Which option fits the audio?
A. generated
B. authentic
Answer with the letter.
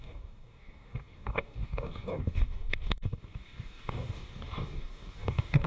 A